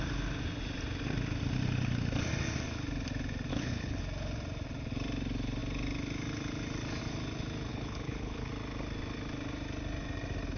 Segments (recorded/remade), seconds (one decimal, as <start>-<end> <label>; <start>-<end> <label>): 0.0-3.5 recorded; 3.5-4.0 remade; 4.0-7.7 recorded; 7.7-8.5 remade; 8.5-10.6 recorded